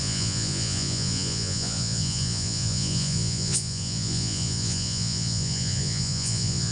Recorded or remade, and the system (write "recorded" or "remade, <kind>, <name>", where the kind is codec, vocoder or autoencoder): remade, vocoder, Vocos